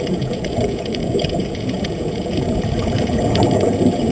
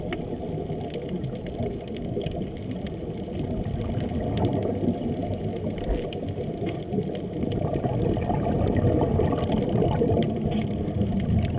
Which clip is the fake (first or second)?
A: first